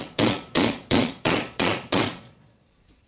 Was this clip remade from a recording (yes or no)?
yes